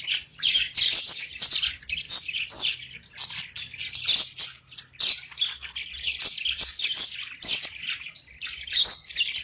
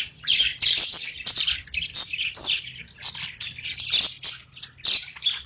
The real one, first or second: first